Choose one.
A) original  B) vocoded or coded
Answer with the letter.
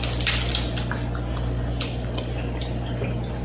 A